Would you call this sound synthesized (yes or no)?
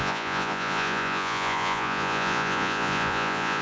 yes